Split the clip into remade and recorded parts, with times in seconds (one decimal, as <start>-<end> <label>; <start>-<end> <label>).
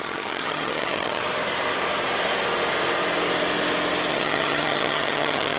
0.0-1.2 remade; 1.2-4.1 recorded; 4.1-5.6 remade